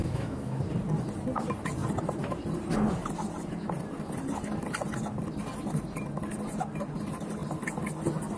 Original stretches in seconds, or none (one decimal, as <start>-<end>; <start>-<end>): 0.6-8.4